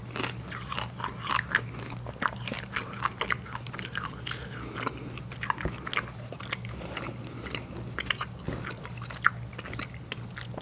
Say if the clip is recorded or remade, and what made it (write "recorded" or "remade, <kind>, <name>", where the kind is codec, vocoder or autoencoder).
recorded